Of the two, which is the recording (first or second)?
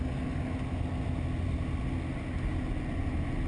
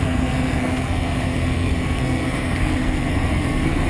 first